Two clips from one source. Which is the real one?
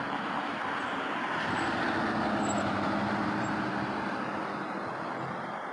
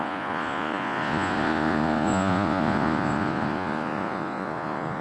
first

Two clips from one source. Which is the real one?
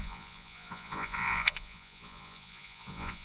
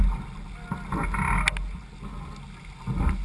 second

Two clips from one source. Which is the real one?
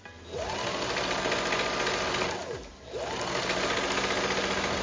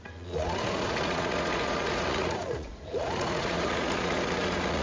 first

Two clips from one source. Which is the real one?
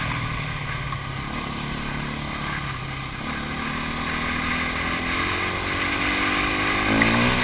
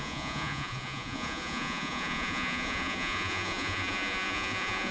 first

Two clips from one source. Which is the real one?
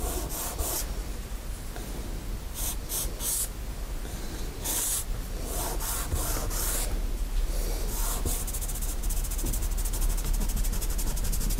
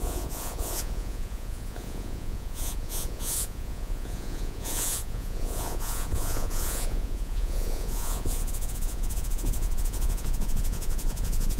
first